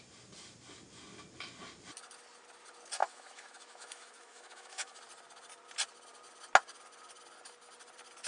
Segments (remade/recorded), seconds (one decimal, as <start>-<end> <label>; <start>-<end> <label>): 0.0-3.0 recorded; 3.0-5.0 remade; 5.0-8.3 recorded